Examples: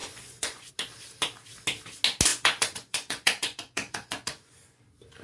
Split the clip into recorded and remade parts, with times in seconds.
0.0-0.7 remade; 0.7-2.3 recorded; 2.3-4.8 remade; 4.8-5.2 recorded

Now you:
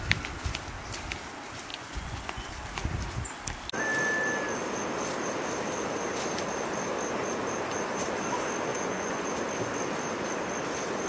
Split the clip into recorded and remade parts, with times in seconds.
0.0-1.7 recorded; 1.7-2.5 remade; 2.5-8.7 recorded; 8.7-9.3 remade; 9.3-11.1 recorded

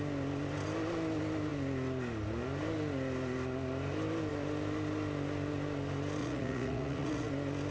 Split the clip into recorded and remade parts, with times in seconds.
0.0-6.2 recorded; 6.2-7.3 remade; 7.3-7.7 recorded

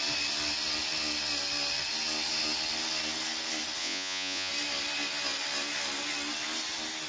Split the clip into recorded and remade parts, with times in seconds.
0.0-3.8 recorded; 3.8-4.5 remade; 4.5-7.1 recorded

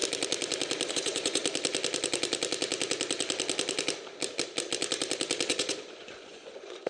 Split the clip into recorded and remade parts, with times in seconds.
0.0-0.9 recorded; 0.9-1.4 remade; 1.4-5.5 recorded; 5.5-6.9 remade

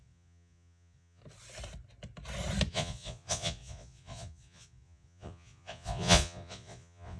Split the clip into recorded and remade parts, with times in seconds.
0.0-1.2 remade; 1.2-2.7 recorded; 2.7-7.2 remade

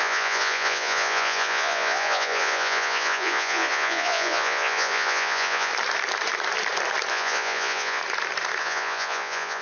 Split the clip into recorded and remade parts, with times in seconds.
0.0-5.7 remade; 5.7-7.1 recorded; 7.1-8.0 remade; 8.0-8.6 recorded; 8.6-9.6 remade

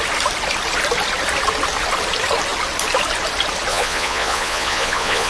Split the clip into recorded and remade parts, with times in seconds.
0.0-3.7 recorded; 3.7-5.3 remade